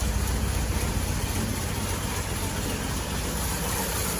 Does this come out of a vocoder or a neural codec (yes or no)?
yes